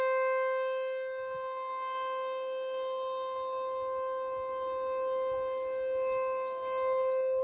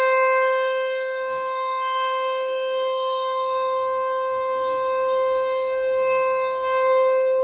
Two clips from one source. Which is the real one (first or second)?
first